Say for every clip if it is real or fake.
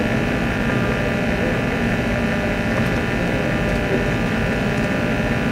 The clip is real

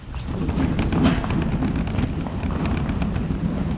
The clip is real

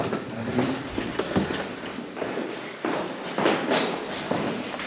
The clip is fake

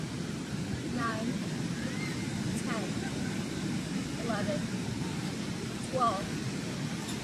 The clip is fake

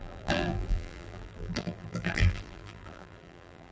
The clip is fake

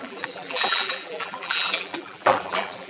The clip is fake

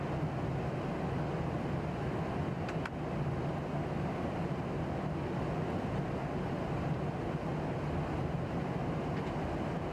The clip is real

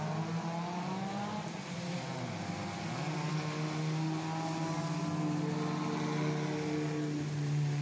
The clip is real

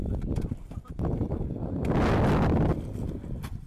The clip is real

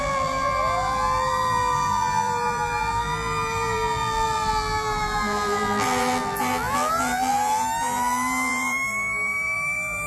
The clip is fake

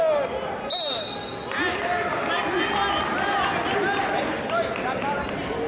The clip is real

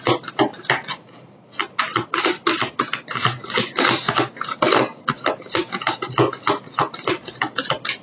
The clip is real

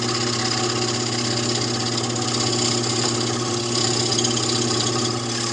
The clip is fake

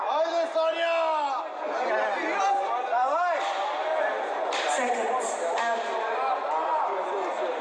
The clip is real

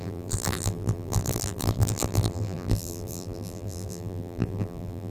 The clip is fake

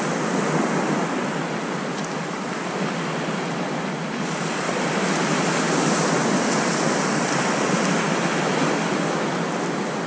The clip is real